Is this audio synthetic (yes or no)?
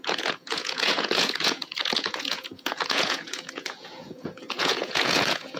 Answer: yes